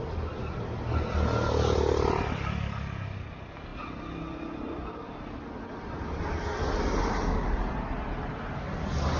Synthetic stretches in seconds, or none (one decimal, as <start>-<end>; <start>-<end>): none